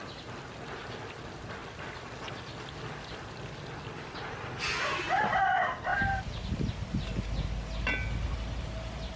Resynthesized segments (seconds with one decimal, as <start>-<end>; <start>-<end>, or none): none